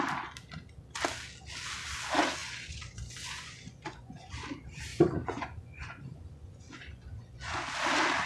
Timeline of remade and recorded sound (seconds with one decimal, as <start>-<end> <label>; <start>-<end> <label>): 0.0-2.4 recorded; 2.4-4.3 remade; 4.3-4.9 recorded; 4.9-7.6 remade; 7.6-8.3 recorded